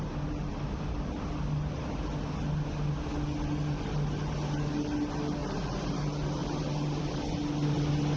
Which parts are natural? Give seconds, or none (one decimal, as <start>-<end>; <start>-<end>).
0.0-5.4; 6.0-8.2